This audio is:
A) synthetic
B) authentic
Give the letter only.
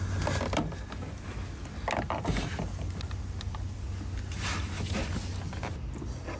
B